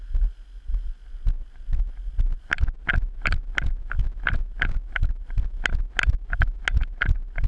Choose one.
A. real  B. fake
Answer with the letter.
A